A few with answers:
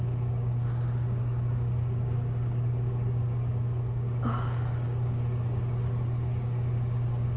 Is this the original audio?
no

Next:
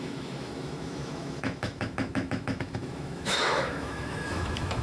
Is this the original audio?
no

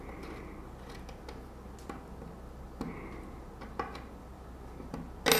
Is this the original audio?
yes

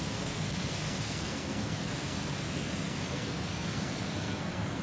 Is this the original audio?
no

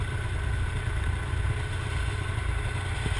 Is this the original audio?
no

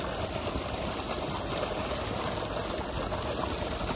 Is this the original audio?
yes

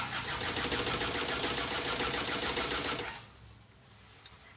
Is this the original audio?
yes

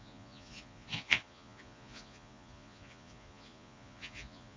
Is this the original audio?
no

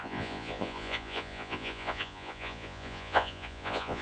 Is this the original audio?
no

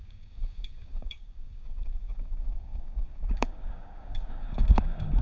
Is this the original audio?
no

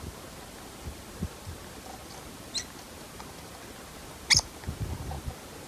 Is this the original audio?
yes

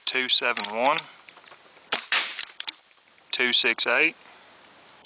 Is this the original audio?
no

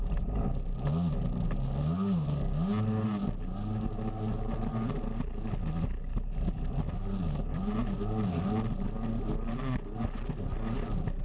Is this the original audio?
yes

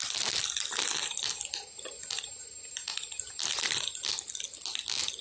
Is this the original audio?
yes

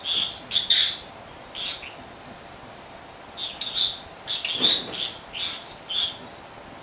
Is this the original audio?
yes